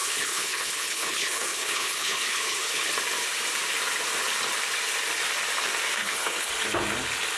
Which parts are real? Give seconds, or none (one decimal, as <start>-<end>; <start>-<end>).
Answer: 2.9-6.0; 6.5-7.4